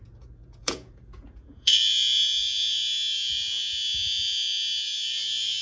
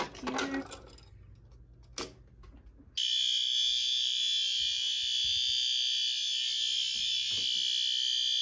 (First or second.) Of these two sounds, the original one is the second